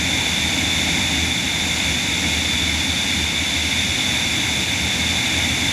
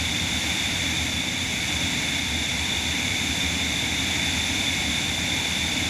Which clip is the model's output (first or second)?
second